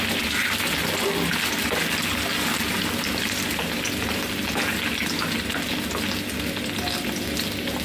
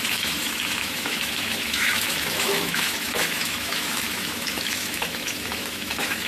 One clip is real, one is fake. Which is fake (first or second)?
second